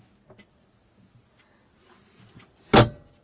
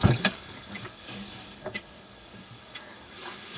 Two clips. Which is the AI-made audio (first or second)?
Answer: second